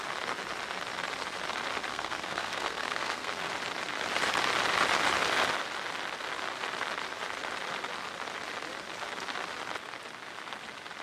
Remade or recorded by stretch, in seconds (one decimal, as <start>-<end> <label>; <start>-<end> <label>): 0.0-1.9 recorded; 1.9-3.5 remade; 3.5-11.0 recorded